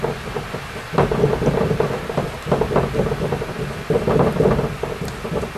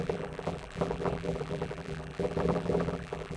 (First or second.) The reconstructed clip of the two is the second